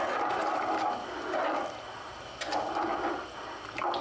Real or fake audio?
real